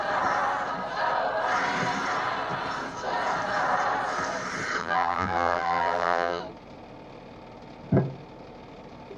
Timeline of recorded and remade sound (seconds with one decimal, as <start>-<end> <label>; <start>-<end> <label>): 0.0-4.8 recorded; 4.8-6.4 remade; 6.4-9.2 recorded